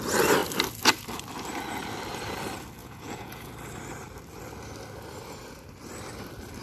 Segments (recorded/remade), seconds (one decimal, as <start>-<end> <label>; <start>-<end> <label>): 0.0-2.8 recorded; 2.8-3.5 remade; 3.5-6.6 recorded